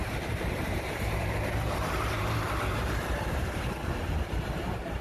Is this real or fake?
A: fake